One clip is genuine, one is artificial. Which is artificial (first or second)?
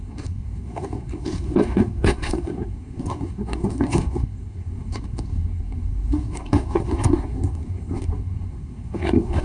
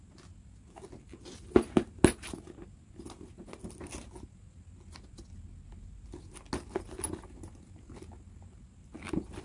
first